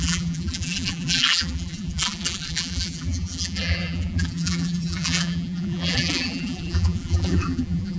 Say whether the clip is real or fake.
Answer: fake